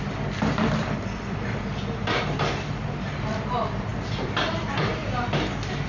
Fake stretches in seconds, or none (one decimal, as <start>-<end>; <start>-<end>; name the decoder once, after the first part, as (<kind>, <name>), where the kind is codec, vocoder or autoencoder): 3.9-5.9 (vocoder, BigVGAN v2)